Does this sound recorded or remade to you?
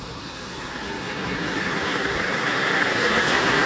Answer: remade